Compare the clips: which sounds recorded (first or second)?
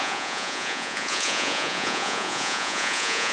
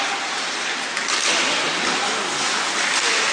second